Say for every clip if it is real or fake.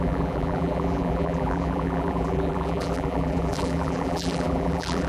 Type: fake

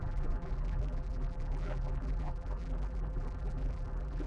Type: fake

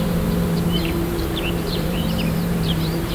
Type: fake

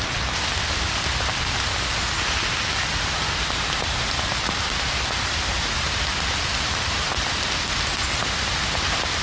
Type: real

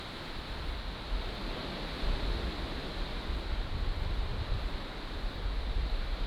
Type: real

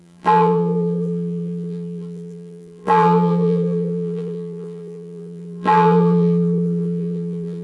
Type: fake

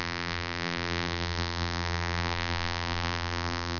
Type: fake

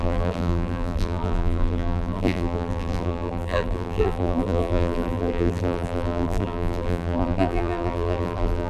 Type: fake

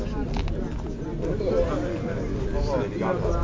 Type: real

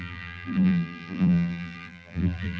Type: fake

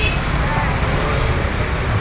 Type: real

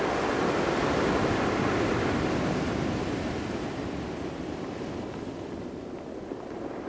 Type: real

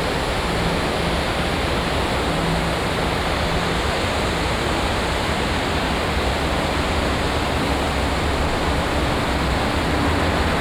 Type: real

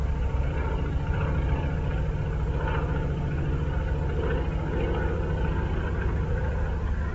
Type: real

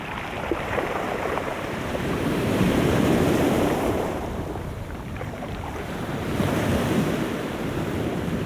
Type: fake